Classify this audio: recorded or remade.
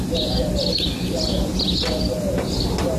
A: recorded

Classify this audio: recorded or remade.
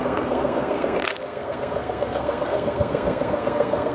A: remade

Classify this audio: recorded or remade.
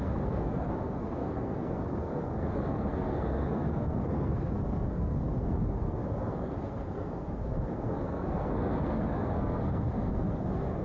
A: remade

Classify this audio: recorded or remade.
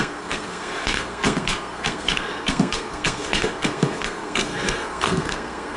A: remade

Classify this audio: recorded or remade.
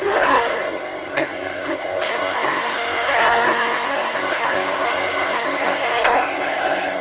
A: remade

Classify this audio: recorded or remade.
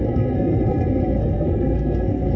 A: remade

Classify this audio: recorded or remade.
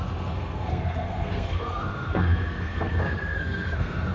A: remade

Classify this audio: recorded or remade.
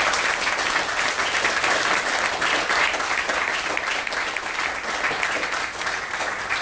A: recorded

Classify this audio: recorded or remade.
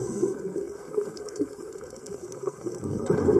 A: remade